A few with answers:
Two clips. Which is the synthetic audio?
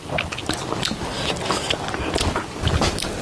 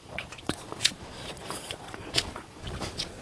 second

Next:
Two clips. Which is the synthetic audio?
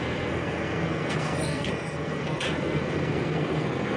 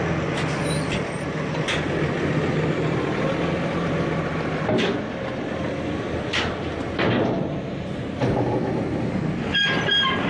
first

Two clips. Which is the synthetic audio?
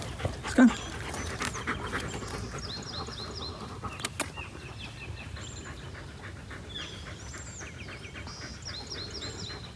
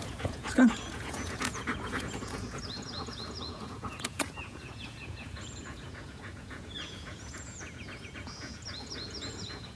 second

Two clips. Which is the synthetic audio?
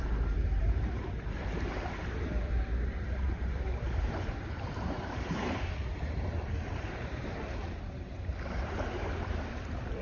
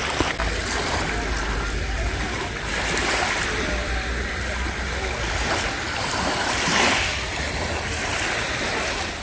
first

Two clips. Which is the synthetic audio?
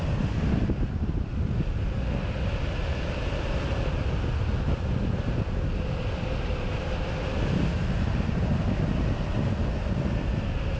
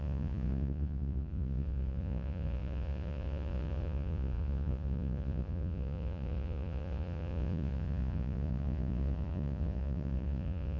second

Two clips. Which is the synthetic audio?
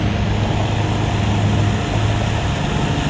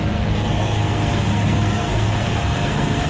second